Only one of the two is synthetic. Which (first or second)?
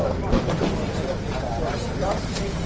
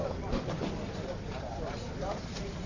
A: second